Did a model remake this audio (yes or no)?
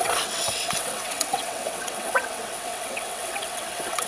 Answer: yes